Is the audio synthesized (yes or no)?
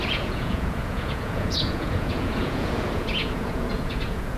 yes